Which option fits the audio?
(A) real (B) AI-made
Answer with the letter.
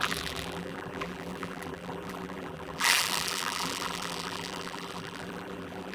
B